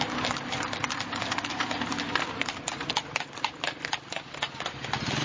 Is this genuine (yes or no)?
yes